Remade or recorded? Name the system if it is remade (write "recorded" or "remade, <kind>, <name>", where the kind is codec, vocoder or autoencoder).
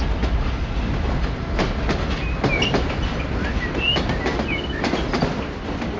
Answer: recorded